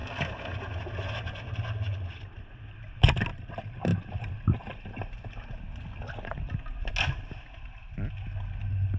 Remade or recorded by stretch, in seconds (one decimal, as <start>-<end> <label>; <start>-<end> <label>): 0.0-9.0 recorded